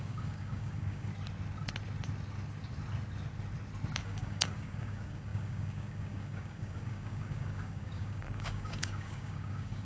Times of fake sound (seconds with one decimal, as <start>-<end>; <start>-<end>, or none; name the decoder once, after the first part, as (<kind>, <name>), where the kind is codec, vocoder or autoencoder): 0.0-1.1 (codec, DAC); 4.0-9.8